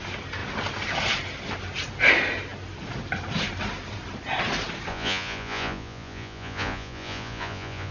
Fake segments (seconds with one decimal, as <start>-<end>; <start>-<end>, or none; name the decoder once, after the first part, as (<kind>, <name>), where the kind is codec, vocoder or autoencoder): 4.9-7.9 (vocoder, Vocos)